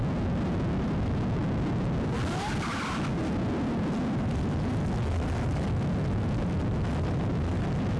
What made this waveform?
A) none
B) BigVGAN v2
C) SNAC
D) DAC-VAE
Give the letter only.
A